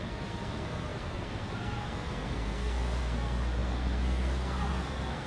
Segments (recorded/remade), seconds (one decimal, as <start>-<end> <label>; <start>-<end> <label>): 0.0-5.3 remade